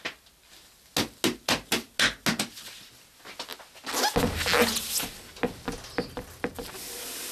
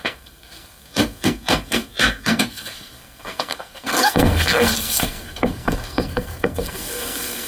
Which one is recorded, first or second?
first